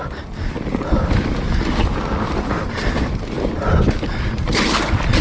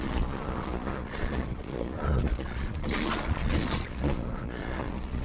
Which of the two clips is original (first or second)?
first